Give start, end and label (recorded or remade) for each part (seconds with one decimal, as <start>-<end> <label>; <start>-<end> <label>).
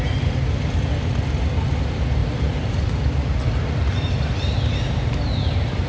0.0-5.9 recorded